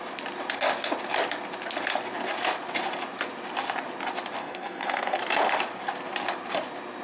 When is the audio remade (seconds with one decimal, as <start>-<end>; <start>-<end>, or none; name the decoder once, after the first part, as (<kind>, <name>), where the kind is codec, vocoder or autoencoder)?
4.4-5.2 (codec, SNAC)